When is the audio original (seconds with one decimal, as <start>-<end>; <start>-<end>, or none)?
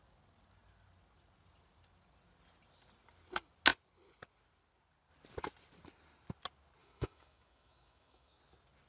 0.0-6.8; 8.4-8.9